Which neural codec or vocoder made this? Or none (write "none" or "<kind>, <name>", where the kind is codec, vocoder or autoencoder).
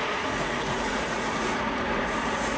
vocoder, Vocos